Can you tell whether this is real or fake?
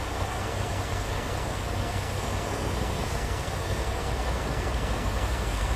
fake